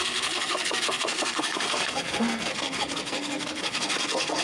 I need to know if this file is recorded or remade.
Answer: remade